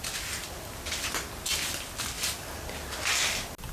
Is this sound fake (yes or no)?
no